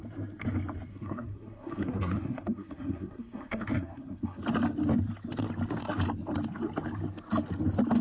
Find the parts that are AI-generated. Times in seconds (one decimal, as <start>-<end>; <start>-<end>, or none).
0.9-4.4